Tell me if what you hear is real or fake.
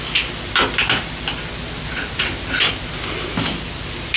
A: real